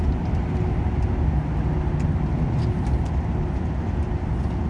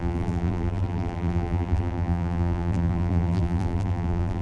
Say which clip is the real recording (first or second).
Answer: first